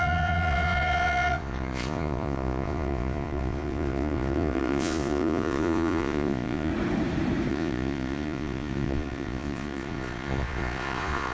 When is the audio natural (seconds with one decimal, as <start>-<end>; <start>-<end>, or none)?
6.7-7.5